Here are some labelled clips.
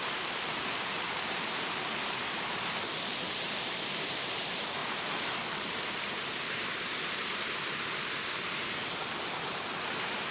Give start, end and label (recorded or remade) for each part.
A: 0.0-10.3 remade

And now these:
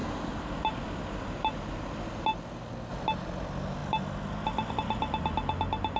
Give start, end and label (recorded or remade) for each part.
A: 0.0-6.0 recorded

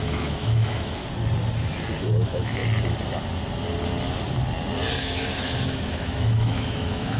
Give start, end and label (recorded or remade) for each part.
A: 0.0-1.0 remade; 1.0-2.0 recorded; 2.0-2.6 remade; 2.6-5.0 recorded; 5.0-7.2 remade

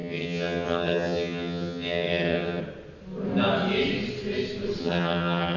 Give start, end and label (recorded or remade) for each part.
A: 0.0-2.6 remade; 2.6-4.8 recorded; 4.8-5.6 remade

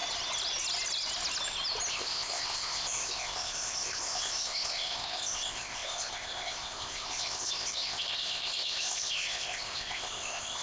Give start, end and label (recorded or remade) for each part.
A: 0.0-1.9 recorded; 1.9-10.6 remade

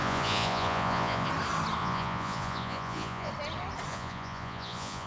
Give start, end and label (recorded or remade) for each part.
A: 0.0-1.3 remade; 1.3-1.8 recorded; 1.8-3.3 remade; 3.3-3.9 recorded; 3.9-5.1 remade

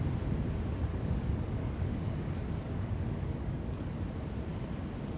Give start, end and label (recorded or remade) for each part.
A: 0.0-0.9 recorded; 0.9-4.0 remade; 4.0-5.2 recorded